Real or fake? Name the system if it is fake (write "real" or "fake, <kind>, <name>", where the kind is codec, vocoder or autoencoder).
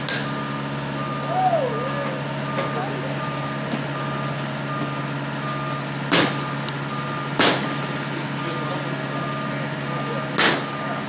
real